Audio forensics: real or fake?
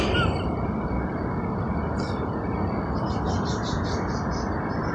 real